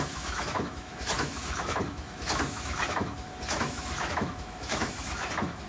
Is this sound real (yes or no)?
no